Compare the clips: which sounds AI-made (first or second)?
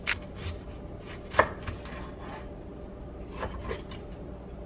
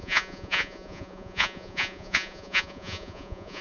second